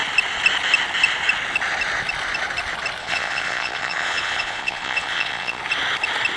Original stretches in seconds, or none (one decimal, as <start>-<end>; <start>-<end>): 0.0-3.0; 5.6-6.4